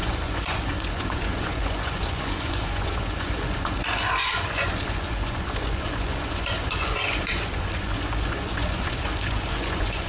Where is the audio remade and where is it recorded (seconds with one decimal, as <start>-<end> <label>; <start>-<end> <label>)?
0.0-10.1 remade